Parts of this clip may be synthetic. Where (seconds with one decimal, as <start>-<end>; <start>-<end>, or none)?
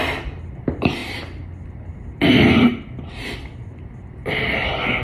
none